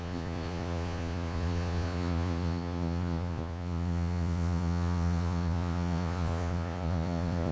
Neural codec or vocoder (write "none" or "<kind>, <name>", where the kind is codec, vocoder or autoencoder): vocoder, Vocos